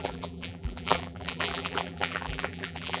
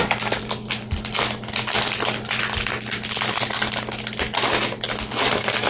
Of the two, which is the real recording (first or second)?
second